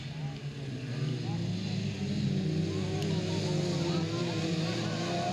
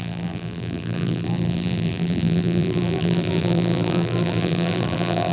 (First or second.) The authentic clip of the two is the first